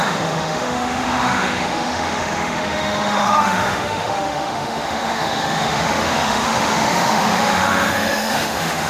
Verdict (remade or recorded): remade